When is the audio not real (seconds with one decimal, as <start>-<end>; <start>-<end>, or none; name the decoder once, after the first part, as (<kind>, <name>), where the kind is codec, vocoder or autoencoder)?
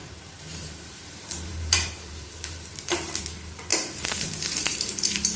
0.0-3.2 (vocoder, BigVGAN v2); 3.7-5.4